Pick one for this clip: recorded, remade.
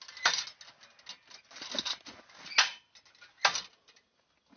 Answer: recorded